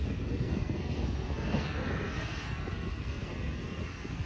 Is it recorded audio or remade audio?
remade